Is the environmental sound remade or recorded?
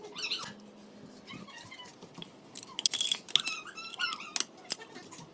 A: recorded